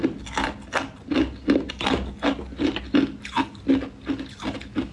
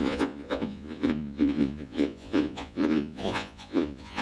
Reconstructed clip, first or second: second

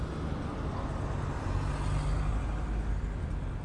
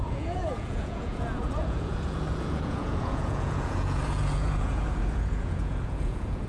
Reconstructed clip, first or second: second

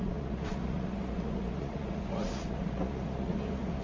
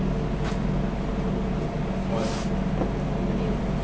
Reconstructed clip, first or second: first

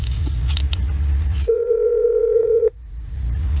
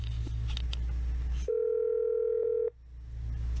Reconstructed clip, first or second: first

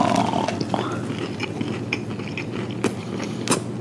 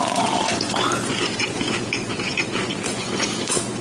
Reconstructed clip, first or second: second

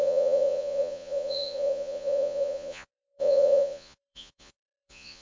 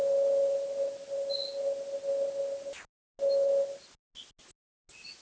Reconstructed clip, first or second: first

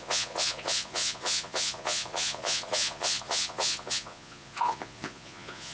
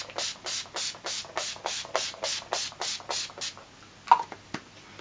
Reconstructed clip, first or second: first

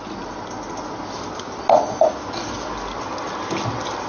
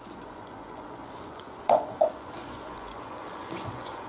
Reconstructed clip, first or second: second